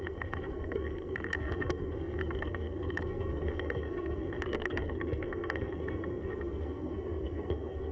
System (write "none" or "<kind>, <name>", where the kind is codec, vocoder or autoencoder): codec, SNAC